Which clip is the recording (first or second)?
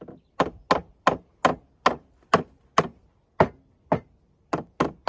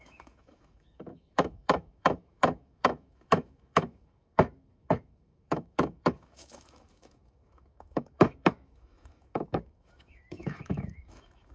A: first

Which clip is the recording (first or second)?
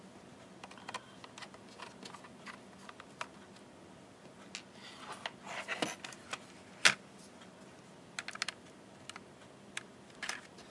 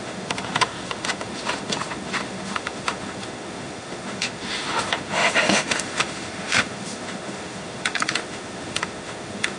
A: first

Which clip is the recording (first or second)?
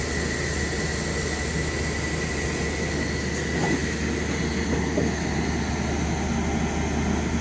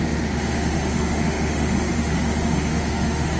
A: first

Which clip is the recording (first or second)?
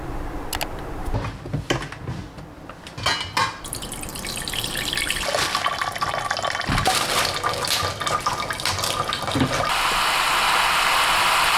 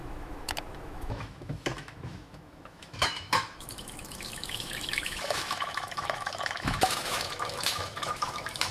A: first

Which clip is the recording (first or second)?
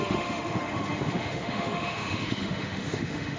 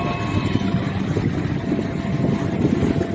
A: second